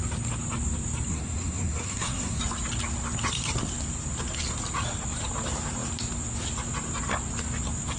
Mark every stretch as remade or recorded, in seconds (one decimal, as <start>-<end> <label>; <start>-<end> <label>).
0.0-1.1 recorded; 1.1-2.4 remade; 2.4-8.0 recorded